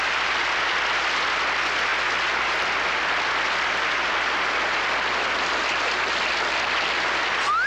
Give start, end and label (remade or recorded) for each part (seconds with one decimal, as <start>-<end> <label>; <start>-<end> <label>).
0.0-7.7 recorded